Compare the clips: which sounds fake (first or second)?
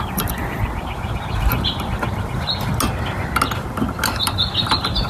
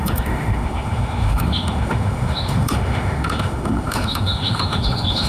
second